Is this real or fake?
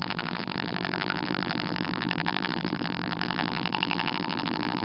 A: fake